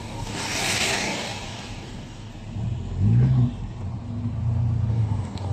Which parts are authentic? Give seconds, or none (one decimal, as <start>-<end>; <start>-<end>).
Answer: 2.3-4.9